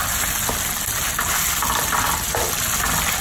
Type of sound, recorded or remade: recorded